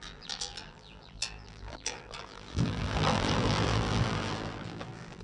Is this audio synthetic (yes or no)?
yes